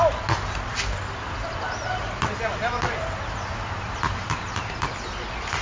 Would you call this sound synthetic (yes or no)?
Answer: no